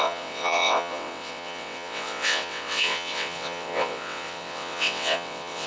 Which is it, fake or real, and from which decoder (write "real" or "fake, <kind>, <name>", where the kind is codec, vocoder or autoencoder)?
fake, vocoder, WaveNeXt